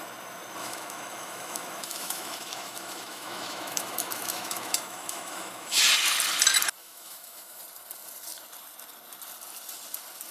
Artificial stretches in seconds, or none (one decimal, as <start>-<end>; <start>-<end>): 0.6-5.8; 6.8-7.6